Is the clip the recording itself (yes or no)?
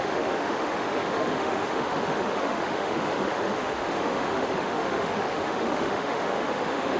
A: no